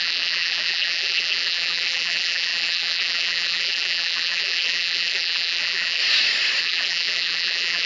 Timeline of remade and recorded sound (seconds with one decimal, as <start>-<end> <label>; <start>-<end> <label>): 0.0-6.0 remade; 6.0-6.6 recorded; 6.6-7.9 remade